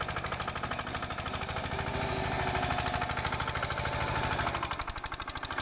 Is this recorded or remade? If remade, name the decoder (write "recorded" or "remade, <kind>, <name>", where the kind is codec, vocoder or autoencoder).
recorded